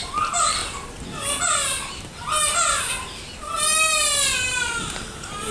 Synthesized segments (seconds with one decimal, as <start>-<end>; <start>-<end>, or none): none